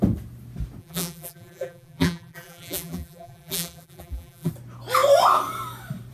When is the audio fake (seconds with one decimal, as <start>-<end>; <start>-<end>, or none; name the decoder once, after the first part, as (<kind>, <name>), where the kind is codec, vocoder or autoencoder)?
0.8-4.5 (vocoder, BigVGAN v2)